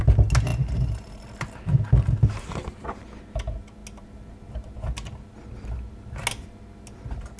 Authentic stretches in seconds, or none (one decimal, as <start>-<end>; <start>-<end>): 0.0-7.4